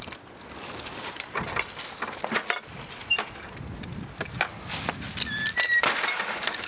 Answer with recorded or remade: recorded